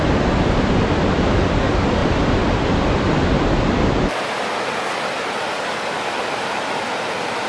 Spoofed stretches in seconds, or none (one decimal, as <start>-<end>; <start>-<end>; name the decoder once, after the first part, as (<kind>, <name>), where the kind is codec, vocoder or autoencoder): none